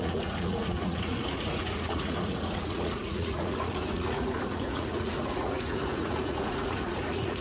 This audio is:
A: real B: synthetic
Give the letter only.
B